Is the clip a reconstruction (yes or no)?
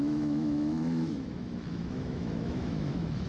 yes